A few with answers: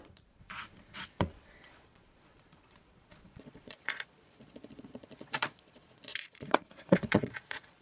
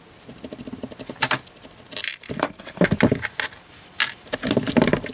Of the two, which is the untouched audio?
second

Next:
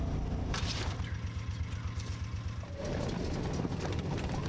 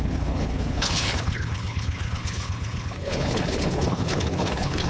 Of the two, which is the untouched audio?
first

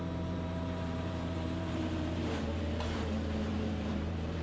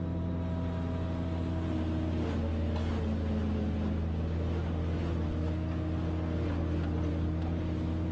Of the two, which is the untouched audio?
second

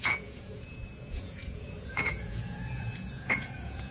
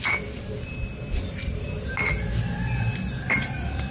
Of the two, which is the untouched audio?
second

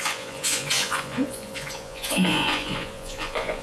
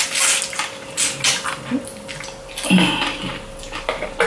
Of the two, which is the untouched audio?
second